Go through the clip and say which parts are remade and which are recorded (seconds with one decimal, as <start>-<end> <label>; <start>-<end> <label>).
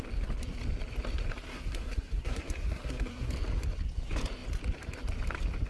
0.0-1.5 recorded; 1.5-3.3 remade; 3.3-5.7 recorded